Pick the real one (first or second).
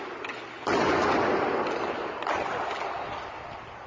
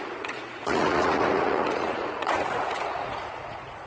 first